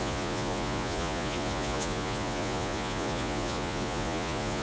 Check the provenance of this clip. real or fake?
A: fake